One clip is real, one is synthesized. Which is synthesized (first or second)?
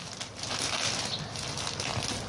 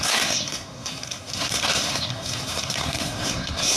second